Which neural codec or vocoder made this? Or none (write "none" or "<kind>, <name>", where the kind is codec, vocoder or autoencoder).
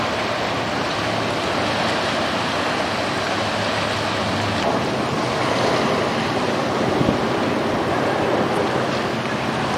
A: none